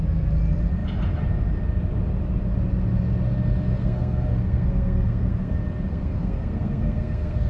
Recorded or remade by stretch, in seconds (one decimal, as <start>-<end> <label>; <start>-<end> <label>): 0.0-3.8 recorded; 3.8-5.5 remade; 5.5-5.9 recorded; 5.9-7.5 remade